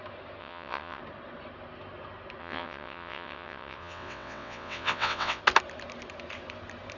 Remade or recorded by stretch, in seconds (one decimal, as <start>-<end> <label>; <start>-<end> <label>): 0.0-0.4 recorded; 0.4-1.0 remade; 1.0-2.4 recorded; 2.4-5.4 remade; 5.4-7.0 recorded